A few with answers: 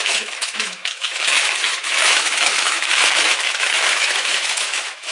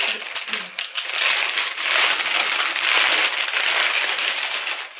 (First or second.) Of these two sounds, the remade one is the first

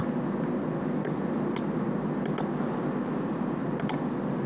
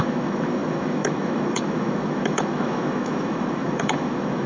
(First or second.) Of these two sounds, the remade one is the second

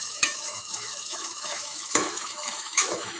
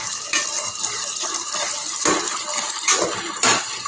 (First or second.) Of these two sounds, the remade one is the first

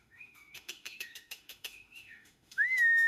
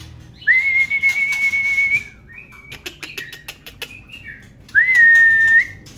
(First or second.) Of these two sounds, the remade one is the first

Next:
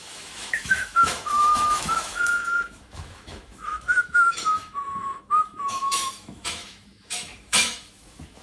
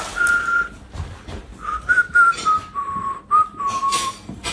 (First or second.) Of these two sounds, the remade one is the first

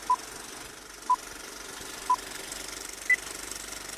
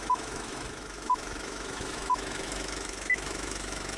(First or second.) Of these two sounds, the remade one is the second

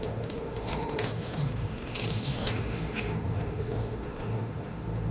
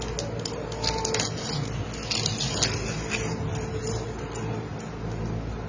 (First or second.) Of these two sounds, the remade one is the first